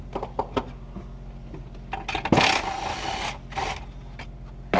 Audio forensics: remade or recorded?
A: recorded